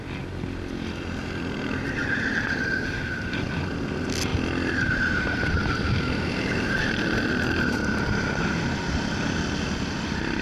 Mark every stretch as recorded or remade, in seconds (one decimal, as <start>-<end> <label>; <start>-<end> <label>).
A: 0.0-2.0 recorded; 2.0-3.9 remade; 3.9-10.4 recorded